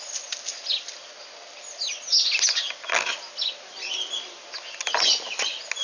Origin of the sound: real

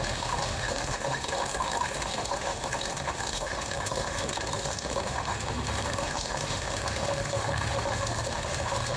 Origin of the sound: fake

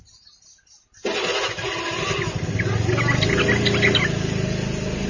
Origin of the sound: real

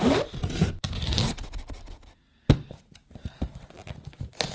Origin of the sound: fake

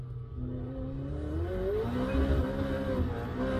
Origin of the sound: real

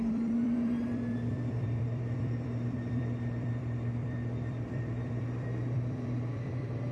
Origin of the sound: fake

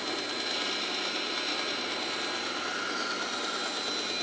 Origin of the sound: real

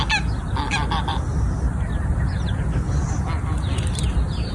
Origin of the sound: real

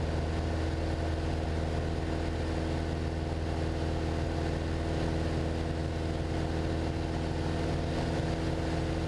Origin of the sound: real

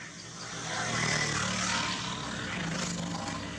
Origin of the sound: real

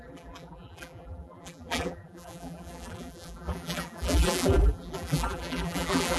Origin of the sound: fake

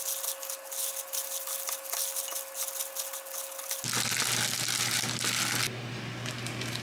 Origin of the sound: real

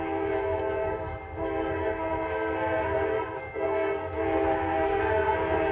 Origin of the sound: fake